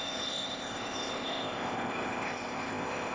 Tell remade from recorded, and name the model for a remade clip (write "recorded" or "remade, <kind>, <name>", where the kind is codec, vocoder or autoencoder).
remade, codec, ZipCodec